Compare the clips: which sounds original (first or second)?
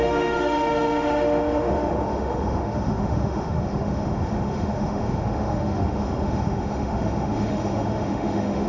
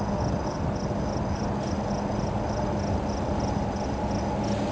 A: second